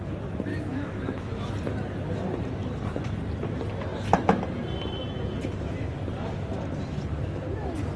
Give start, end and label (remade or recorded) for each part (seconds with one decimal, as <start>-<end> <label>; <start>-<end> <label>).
0.0-0.5 recorded; 0.5-1.5 remade; 1.5-8.0 recorded